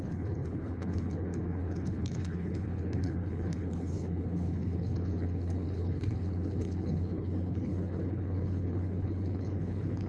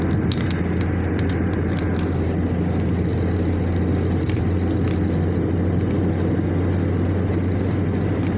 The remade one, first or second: first